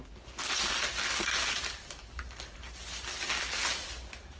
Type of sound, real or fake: real